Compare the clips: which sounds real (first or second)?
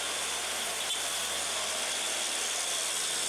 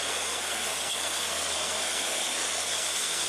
first